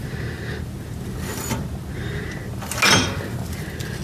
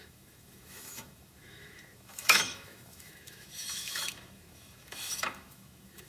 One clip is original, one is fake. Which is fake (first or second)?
second